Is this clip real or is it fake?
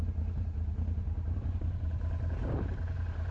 real